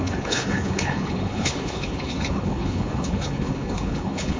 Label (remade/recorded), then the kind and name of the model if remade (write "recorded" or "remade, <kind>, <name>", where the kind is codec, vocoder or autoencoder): remade, codec, HILCodec